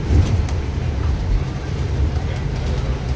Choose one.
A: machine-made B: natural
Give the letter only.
B